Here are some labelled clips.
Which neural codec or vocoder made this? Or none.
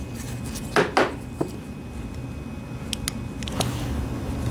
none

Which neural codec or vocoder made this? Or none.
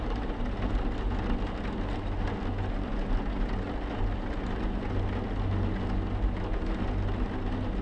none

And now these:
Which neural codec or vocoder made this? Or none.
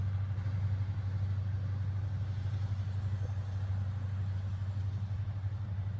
none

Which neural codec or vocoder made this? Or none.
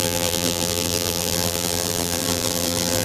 vocoder, BigVGAN v2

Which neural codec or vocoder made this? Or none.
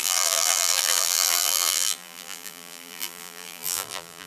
vocoder, BigVGAN v2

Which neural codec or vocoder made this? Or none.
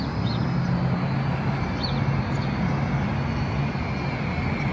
none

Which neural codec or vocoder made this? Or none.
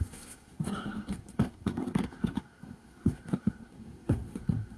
codec, SNAC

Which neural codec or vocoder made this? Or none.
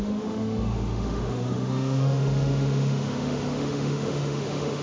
autoencoder, DAC-VAE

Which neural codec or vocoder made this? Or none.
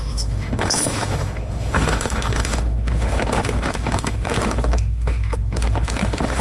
autoencoder, DAC-VAE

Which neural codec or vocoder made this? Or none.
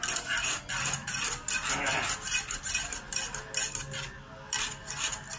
none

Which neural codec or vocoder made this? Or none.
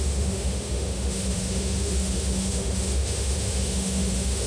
autoencoder, DAC-VAE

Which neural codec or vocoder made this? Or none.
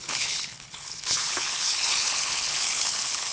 codec, HILCodec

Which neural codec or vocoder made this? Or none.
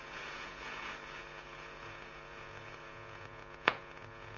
vocoder, Vocos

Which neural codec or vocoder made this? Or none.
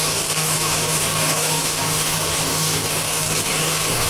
codec, DAC